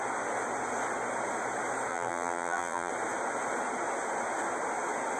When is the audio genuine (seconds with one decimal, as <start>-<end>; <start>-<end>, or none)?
0.0-1.9; 2.9-5.2